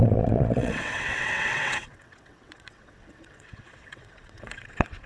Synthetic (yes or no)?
yes